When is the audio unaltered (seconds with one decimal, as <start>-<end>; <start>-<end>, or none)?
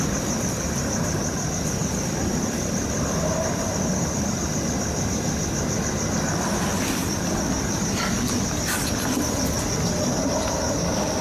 0.0-11.2